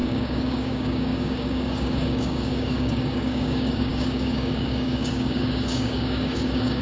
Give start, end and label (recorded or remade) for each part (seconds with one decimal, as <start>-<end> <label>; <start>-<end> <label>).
0.0-6.8 remade